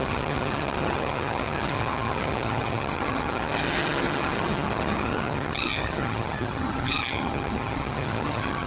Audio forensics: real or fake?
fake